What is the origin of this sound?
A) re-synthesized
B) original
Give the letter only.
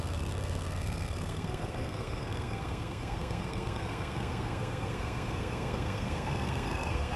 A